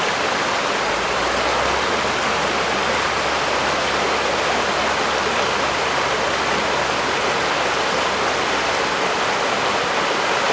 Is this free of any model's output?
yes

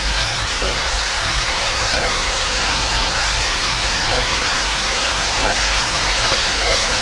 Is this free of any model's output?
no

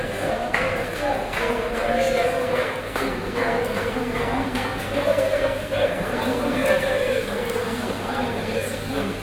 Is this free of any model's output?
no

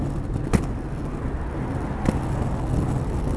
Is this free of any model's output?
yes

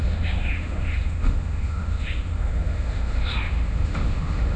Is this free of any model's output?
no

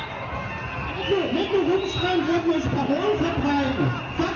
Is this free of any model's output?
yes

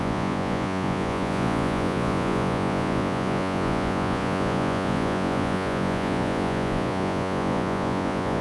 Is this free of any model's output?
no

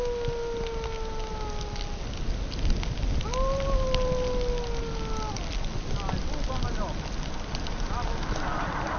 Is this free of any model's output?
yes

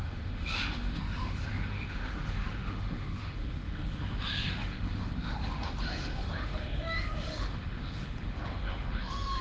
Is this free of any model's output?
no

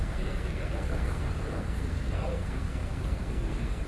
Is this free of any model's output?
no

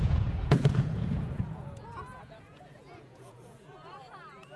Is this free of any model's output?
no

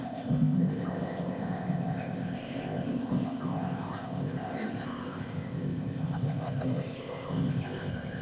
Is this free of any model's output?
no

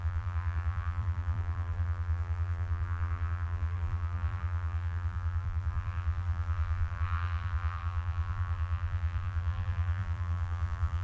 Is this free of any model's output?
no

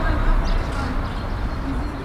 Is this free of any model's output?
yes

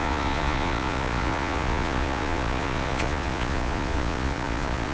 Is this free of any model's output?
no